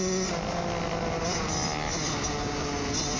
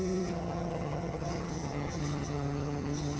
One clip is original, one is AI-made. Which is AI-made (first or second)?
second